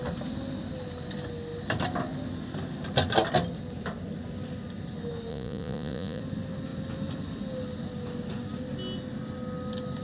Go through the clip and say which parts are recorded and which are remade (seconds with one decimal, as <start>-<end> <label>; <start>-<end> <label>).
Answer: 0.0-5.3 recorded; 5.3-6.2 remade; 6.2-10.0 recorded